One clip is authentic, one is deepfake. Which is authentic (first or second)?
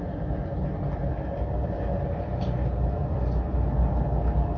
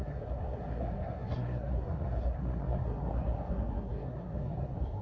first